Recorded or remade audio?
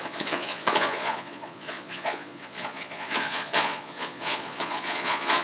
remade